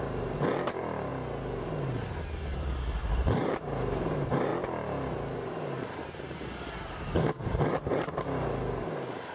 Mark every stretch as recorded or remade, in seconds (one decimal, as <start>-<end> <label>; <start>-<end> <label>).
0.0-1.1 remade; 1.1-2.5 recorded; 2.5-4.5 remade; 4.5-5.8 recorded; 5.8-9.3 remade